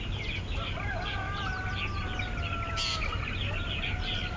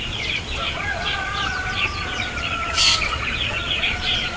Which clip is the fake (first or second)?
second